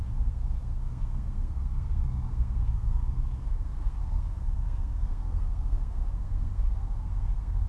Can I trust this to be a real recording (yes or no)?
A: no